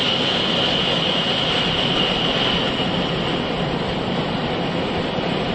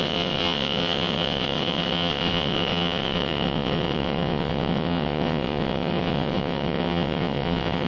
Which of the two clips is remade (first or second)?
second